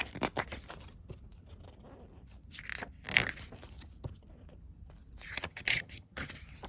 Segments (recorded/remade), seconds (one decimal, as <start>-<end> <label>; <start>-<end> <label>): 0.0-5.3 recorded; 5.3-6.3 remade; 6.3-6.7 recorded